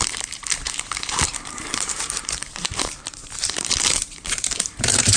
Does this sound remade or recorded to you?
remade